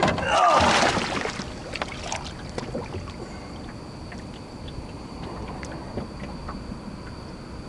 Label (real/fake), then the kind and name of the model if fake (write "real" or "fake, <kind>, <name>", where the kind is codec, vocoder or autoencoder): real